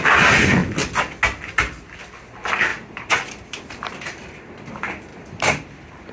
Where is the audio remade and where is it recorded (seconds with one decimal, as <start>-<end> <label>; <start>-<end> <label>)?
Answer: 0.0-2.7 recorded; 2.7-3.3 remade; 3.3-5.1 recorded; 5.1-6.1 remade